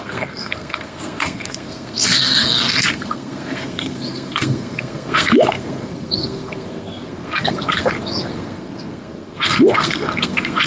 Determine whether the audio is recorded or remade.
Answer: remade